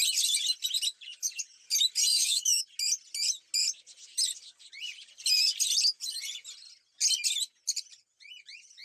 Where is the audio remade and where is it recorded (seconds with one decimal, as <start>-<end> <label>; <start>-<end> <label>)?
0.0-2.1 recorded; 2.1-2.6 remade; 2.6-8.8 recorded